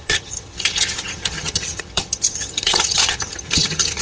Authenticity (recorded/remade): remade